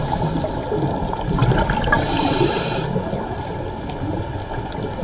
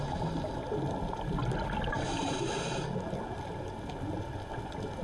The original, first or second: second